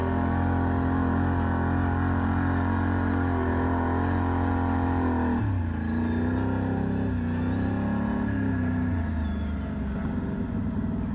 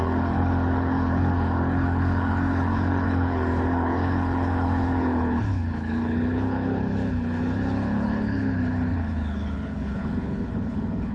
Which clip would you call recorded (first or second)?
first